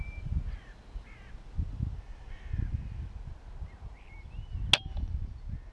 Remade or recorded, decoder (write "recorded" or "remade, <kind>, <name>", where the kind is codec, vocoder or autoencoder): recorded